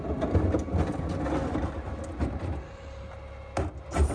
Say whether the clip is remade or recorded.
recorded